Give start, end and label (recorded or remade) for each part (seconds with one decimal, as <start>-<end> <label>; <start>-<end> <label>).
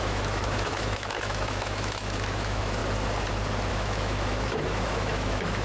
0.0-2.8 remade; 2.8-3.7 recorded; 3.7-5.6 remade